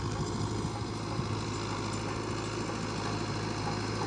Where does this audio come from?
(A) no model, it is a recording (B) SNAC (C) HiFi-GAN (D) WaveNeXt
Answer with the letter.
A